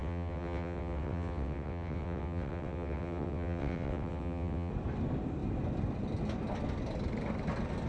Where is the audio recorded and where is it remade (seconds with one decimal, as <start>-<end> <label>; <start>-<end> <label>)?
0.0-4.7 remade; 4.7-7.9 recorded